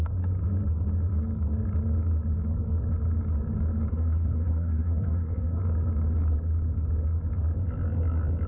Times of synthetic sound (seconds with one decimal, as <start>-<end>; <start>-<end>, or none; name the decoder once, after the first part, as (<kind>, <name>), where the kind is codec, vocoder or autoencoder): 3.9-5.6 (codec, SNAC)